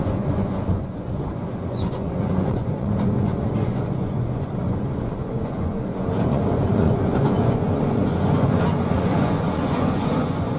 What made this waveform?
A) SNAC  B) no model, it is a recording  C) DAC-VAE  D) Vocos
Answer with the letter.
D